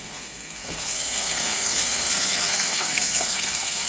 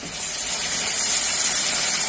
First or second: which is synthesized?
first